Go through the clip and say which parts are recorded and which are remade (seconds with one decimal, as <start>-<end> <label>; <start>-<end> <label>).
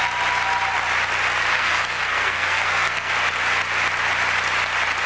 0.0-1.5 recorded; 1.5-3.1 remade; 3.1-5.1 recorded